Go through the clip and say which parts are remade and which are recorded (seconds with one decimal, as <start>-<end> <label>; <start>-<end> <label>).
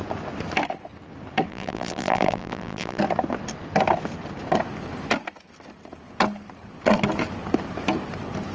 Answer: 0.0-1.5 recorded; 1.5-3.0 remade; 3.0-8.5 recorded